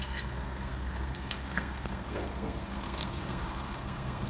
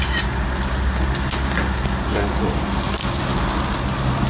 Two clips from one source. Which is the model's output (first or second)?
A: first